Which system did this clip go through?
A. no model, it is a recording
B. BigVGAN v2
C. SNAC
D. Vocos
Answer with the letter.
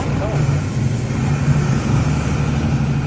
A